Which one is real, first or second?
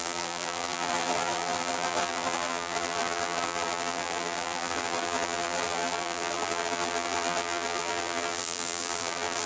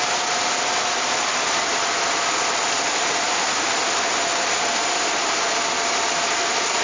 second